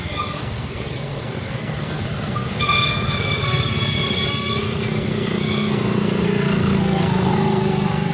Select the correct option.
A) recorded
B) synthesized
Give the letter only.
B